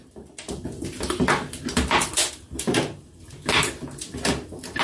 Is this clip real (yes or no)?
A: yes